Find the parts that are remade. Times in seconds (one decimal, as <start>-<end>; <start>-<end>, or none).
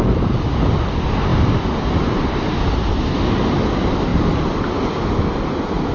none